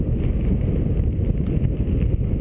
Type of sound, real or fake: real